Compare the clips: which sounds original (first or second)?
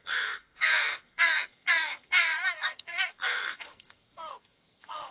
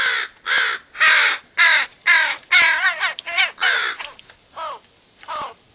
second